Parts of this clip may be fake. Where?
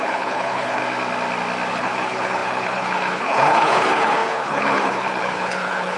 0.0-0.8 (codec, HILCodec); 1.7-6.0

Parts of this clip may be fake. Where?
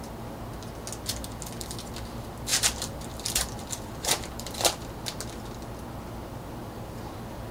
2.5-4.9 (vocoder, BigVGAN v2)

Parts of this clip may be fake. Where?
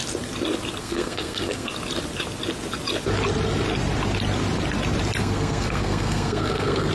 0.8-1.7 (codec, SNAC); 5.2-6.9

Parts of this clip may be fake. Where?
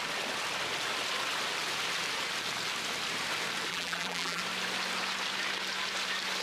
3.7-4.4 (vocoder, BigVGAN v2)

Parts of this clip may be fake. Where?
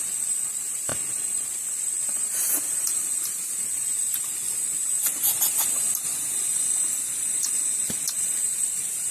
0.0-0.9 (vocoder, BigVGAN v2); 2.0-6.1; 8.0-9.1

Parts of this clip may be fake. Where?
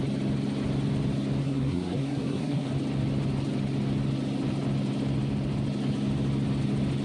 1.4-2.7 (codec, SNAC)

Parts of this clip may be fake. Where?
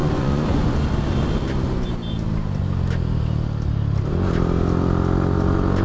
0.0-0.7 (vocoder, Vocos)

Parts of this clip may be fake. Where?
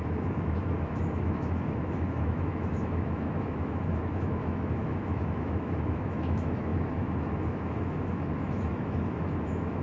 0.0-9.8 (autoencoder, DAC-VAE)